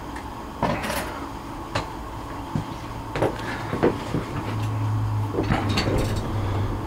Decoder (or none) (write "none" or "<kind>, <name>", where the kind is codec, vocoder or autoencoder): none